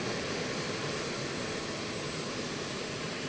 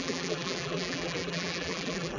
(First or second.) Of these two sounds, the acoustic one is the first